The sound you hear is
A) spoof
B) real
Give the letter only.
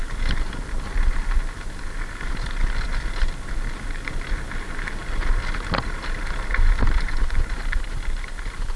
B